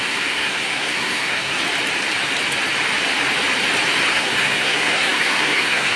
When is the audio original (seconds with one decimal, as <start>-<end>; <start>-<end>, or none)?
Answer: 1.6-4.1